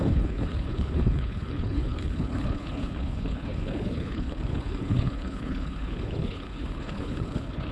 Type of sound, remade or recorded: remade